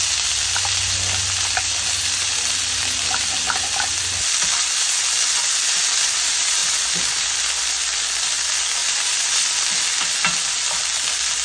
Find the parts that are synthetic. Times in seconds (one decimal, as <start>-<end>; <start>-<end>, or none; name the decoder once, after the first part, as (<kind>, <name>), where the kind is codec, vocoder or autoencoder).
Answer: 6.6-7.3 (vocoder, BigVGAN v2); 8.8-9.5